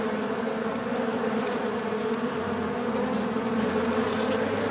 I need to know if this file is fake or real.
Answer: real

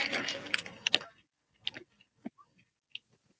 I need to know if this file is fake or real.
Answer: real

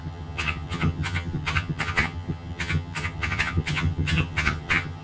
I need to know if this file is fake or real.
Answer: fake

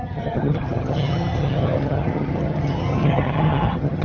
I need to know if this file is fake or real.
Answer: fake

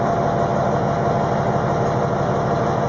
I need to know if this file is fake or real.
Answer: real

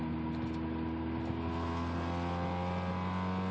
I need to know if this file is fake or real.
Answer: real